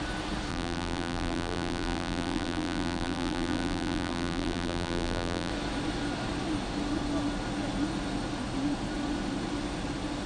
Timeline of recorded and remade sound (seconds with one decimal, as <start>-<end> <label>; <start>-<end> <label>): 0.0-0.5 recorded; 0.5-5.5 remade; 5.5-10.3 recorded